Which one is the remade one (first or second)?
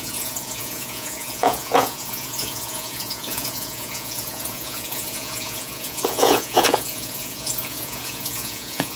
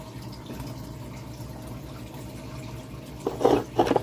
first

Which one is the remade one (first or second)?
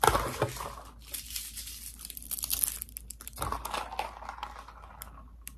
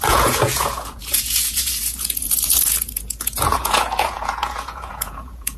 second